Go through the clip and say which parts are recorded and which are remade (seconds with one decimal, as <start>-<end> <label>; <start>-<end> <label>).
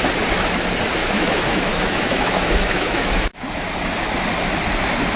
0.0-1.0 recorded; 1.0-3.4 remade; 3.4-5.2 recorded